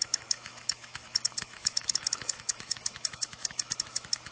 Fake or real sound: fake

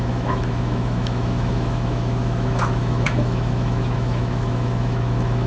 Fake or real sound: fake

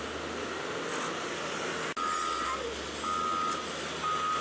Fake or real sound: real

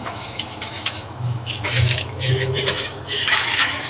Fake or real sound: fake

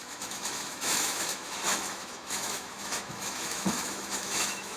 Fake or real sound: fake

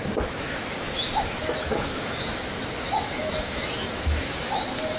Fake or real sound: fake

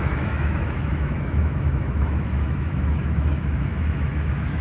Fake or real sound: fake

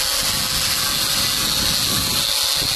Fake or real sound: real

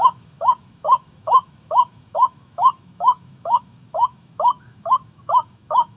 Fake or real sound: fake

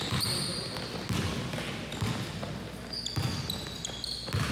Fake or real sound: real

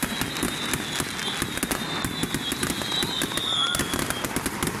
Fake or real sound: real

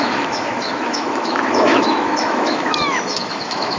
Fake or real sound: fake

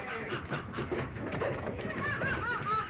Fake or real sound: fake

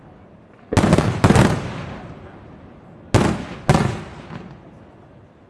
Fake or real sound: real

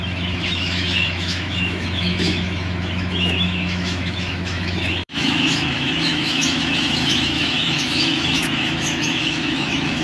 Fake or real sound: fake